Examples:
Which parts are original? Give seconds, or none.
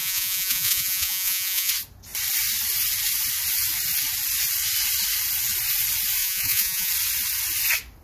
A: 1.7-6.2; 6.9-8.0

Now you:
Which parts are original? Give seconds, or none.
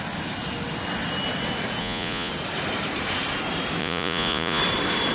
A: 0.0-1.8; 2.3-3.8; 4.6-5.1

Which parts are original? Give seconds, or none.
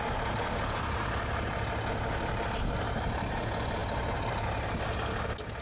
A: 0.0-5.6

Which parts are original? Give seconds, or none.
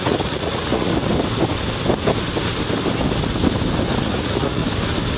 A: 0.9-4.0; 4.6-5.2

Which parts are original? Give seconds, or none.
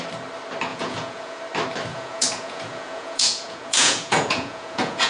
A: 0.0-0.7; 1.4-1.9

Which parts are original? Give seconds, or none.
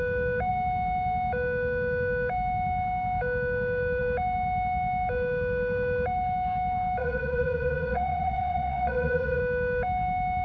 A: 0.0-7.0; 9.4-10.4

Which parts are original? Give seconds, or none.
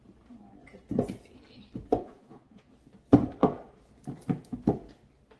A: 0.0-2.0; 2.7-5.4